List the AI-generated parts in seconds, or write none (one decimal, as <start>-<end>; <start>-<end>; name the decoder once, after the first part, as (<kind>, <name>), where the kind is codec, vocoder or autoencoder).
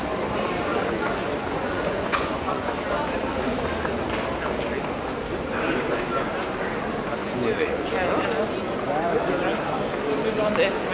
0.7-2.7 (vocoder, Vocos); 7.2-7.9